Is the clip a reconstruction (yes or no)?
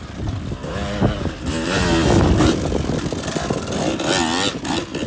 no